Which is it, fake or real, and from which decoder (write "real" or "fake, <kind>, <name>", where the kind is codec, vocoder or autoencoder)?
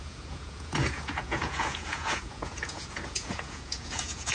fake, vocoder, Vocos